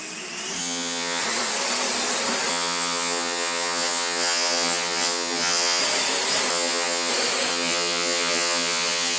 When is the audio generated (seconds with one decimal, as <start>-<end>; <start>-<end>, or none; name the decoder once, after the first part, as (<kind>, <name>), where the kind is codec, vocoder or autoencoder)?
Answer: 0.6-1.2 (vocoder, HiFi-GAN); 2.5-5.8; 6.5-7.1; 7.5-9.2